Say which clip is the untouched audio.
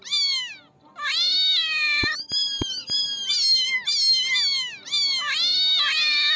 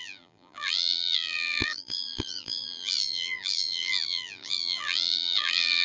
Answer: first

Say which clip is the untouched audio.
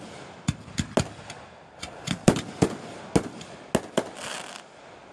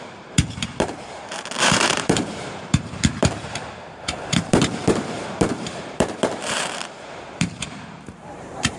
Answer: first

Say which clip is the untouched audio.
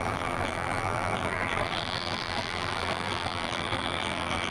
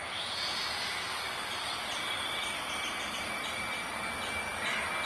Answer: second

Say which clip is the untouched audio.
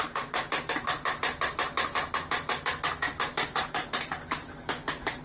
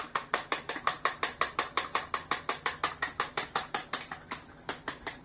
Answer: first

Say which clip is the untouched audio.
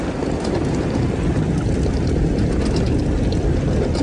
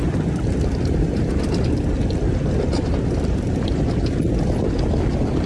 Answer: first